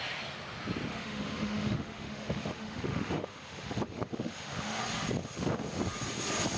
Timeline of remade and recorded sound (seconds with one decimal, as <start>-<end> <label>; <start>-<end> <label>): 0.0-0.9 recorded; 0.9-4.8 remade; 4.8-5.2 recorded; 5.2-5.8 remade; 5.8-6.6 recorded